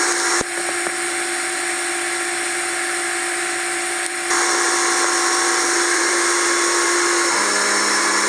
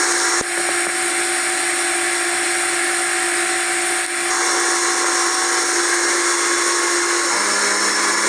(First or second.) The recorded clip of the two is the second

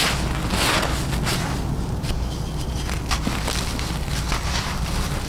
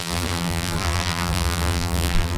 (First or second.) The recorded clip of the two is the first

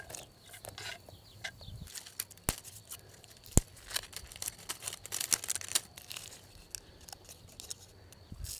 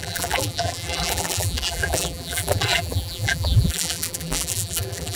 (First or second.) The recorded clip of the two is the first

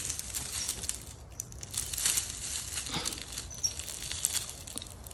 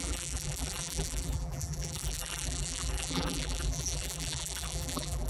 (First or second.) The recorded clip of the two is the first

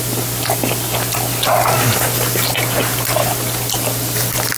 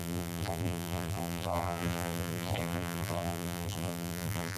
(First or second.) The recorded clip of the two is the first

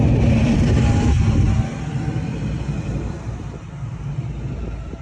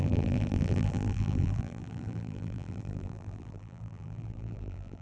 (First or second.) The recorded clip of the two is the first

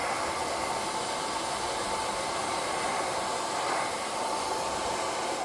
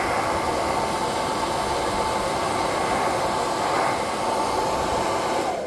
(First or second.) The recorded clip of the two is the second